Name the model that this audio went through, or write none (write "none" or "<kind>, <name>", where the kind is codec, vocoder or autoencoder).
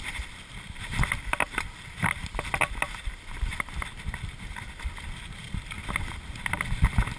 none